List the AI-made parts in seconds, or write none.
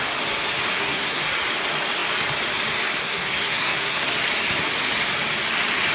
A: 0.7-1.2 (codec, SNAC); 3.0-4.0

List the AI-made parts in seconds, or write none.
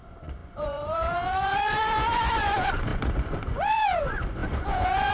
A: 0.0-5.1 (vocoder, Vocos)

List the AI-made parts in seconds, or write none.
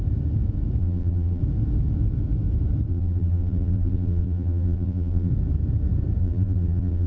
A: 0.8-1.4 (vocoder, BigVGAN v2); 2.9-5.3; 6.2-7.1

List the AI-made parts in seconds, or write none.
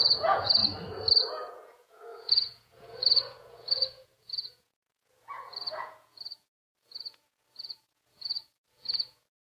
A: 0.0-0.6 (vocoder, Vocos); 1.2-9.5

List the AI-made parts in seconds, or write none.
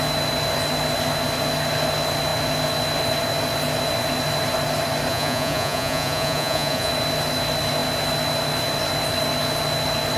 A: 5.1-6.9 (vocoder, Vocos)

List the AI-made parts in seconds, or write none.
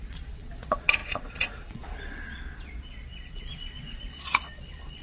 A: 0.0-5.0 (vocoder, Vocos)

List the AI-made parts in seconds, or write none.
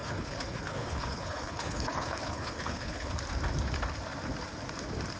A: 0.0-3.1 (codec, HILCodec)